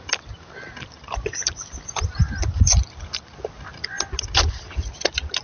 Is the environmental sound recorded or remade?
recorded